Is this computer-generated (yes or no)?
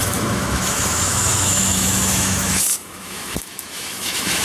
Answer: yes